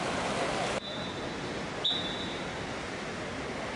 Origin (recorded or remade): recorded